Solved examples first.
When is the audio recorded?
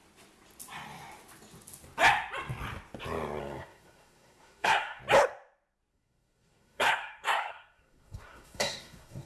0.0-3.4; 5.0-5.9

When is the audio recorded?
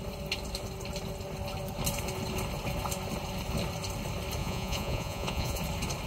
0.0-4.4; 5.6-6.1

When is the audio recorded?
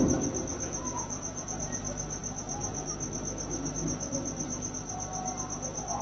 0.0-0.5; 1.8-6.0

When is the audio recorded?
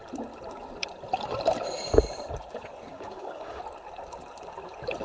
0.0-2.9; 3.6-5.0